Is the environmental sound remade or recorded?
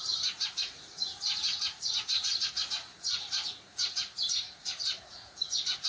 remade